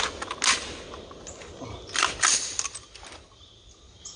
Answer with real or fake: real